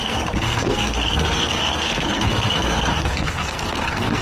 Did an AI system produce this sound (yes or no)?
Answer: yes